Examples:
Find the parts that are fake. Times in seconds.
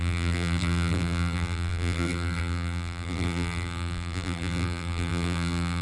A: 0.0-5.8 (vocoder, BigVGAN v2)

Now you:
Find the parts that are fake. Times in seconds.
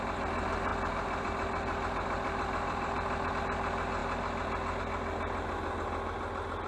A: 0.7-3.3 (vocoder, BigVGAN v2)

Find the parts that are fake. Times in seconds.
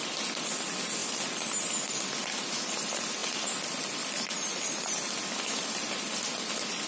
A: none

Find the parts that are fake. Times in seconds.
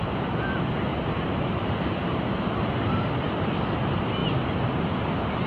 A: 0.9-3.0 (vocoder, BigVGAN v2)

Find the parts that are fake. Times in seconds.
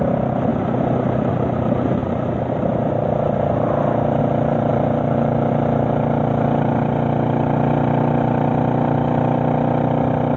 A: 4.7-5.5 (vocoder, BigVGAN v2)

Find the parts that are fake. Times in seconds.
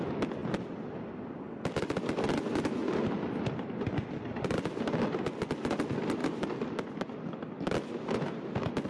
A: 6.2-7.4 (vocoder, BigVGAN v2)